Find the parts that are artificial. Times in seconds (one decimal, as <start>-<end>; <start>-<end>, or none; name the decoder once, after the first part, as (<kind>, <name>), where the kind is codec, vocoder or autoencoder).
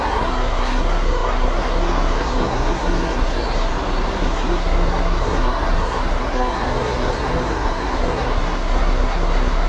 0.0-3.7 (codec, SNAC); 4.2-9.7